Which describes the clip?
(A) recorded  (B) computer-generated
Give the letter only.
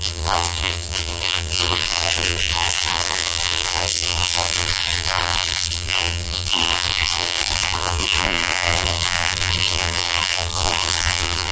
B